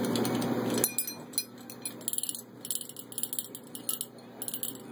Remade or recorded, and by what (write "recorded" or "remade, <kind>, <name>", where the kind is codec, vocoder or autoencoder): recorded